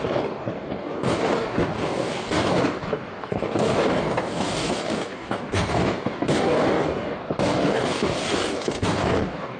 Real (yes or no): no